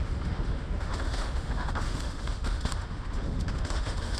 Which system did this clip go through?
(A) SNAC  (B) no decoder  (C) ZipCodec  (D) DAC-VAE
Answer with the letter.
D